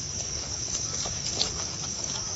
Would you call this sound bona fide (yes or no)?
no